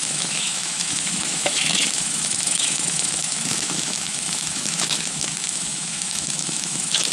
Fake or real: fake